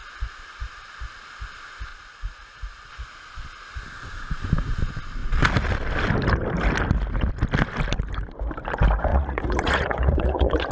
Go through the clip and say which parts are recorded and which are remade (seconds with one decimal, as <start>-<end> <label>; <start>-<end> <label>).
0.0-1.9 recorded; 1.9-2.9 remade; 2.9-9.1 recorded; 9.1-10.7 remade